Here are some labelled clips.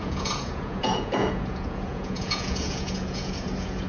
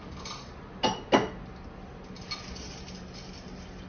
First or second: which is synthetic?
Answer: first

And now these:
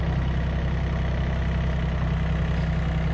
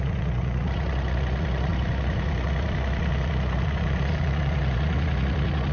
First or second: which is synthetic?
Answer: second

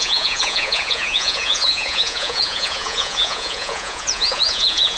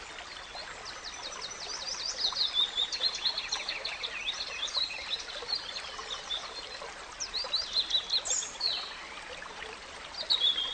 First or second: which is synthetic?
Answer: first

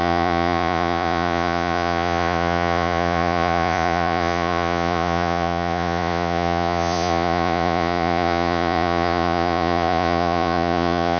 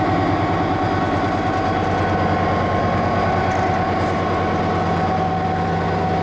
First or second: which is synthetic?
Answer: first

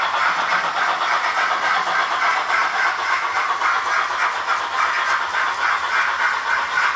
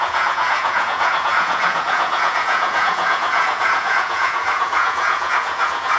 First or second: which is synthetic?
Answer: second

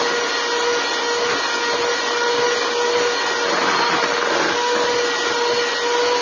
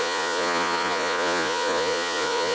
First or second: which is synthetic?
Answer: second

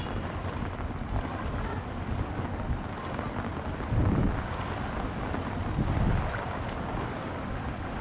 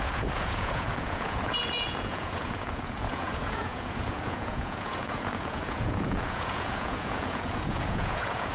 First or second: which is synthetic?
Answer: second